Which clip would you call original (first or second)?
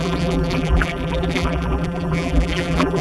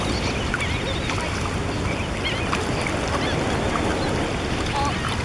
second